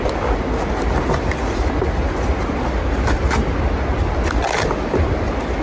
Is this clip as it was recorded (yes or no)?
yes